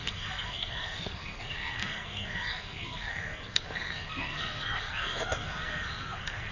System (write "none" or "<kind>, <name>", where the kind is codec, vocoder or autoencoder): codec, SNAC